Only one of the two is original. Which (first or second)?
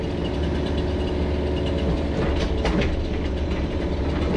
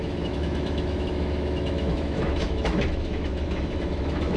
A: first